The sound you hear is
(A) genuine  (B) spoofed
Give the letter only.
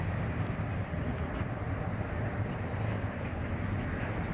A